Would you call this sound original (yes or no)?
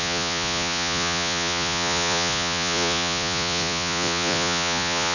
no